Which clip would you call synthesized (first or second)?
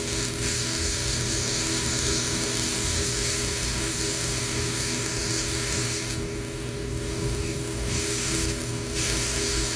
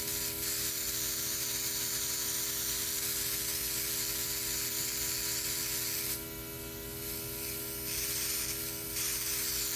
first